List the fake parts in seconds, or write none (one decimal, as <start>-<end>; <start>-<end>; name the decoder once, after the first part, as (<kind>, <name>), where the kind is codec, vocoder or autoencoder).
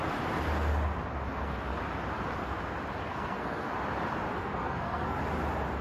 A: 1.3-1.8 (codec, SNAC); 3.0-3.7; 4.4-5.2